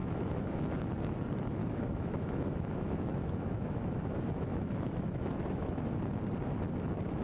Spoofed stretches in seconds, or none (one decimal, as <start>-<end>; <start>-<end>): 0.0-0.8; 1.6-5.9

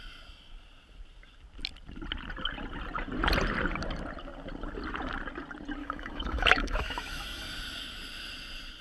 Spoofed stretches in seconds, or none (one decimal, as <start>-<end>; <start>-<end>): 5.8-7.4

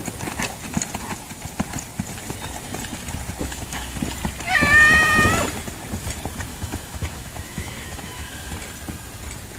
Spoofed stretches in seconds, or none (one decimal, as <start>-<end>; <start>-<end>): 3.4-4.0; 6.5-8.5

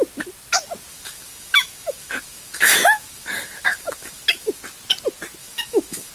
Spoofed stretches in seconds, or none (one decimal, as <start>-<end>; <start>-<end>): 0.9-4.6; 5.4-6.1

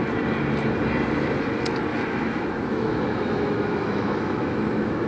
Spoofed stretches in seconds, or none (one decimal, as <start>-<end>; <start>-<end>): 1.9-5.1

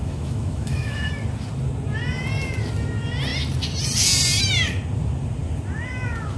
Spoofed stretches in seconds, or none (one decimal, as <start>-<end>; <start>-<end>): 0.0-1.1

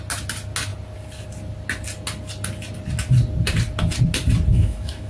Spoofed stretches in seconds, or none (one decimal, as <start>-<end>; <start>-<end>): 4.5-5.1

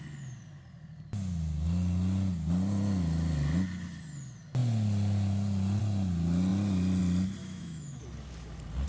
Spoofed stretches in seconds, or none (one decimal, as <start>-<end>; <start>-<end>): 7.4-8.0